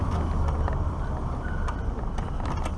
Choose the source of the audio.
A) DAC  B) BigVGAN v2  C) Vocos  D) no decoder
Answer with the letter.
D